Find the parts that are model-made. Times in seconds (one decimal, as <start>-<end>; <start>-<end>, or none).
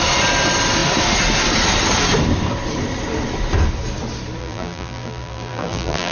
4.4-6.1